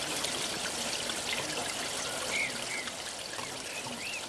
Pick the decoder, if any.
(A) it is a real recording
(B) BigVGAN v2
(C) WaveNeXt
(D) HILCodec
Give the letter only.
A